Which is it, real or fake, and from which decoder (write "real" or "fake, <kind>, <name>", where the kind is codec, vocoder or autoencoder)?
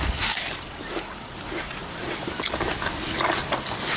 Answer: real